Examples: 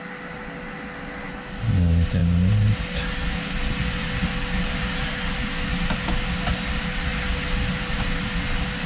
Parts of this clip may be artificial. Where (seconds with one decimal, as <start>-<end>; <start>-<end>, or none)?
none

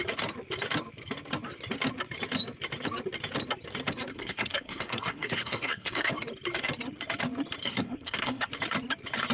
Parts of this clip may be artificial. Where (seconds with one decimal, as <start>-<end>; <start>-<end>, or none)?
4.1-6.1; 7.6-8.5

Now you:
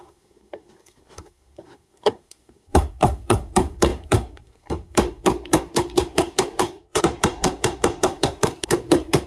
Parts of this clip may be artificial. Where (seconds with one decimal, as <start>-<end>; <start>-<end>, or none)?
0.0-9.3

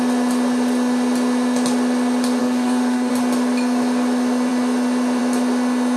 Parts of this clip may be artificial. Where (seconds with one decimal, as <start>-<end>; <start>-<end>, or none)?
2.4-3.1

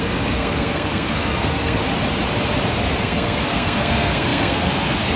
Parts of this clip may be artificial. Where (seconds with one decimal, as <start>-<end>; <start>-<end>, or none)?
0.0-1.8; 3.0-5.2